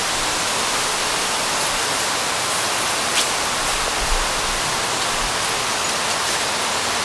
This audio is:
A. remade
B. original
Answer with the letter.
B